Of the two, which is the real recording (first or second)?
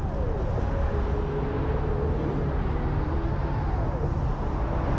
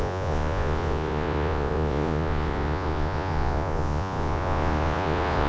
first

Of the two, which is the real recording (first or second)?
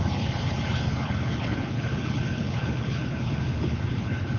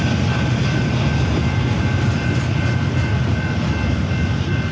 second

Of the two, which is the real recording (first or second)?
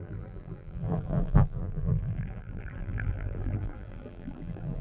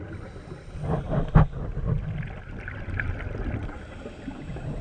second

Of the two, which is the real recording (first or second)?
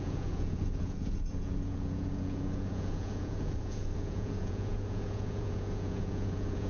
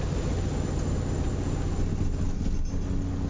second